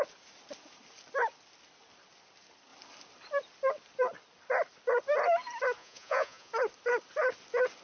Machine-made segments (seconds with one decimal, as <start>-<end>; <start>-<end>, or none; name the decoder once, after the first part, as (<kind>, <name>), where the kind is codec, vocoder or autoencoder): 5.8-6.5 (vocoder, Vocos)